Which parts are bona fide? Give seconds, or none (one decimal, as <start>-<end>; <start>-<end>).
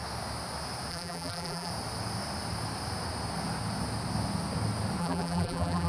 0.0-0.9; 1.7-5.0